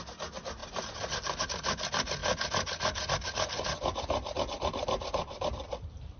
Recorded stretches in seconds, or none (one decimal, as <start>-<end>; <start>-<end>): 0.0-6.2